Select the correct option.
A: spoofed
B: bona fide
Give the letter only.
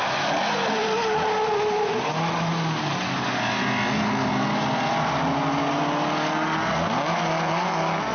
B